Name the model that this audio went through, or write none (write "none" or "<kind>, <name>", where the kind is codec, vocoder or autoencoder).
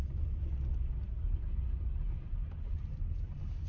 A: none